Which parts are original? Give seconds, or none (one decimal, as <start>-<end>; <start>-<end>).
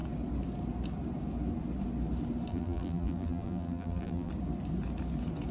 0.0-2.5; 4.3-5.5